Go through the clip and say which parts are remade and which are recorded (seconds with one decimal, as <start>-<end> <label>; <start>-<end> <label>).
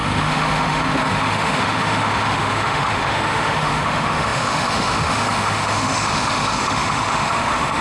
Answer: 0.0-7.8 remade